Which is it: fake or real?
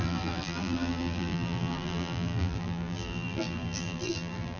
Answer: fake